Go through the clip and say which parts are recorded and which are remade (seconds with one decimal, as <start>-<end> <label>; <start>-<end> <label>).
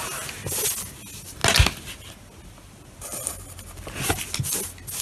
0.0-5.0 recorded